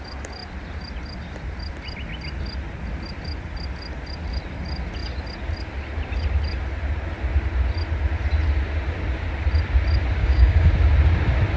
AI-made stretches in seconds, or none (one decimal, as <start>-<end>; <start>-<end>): 10.2-10.7